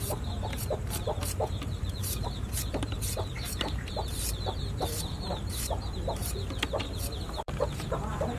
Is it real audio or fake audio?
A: fake